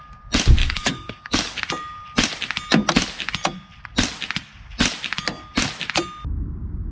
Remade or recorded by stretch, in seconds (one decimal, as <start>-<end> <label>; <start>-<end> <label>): 0.0-0.6 recorded; 0.6-1.6 remade; 1.6-6.9 recorded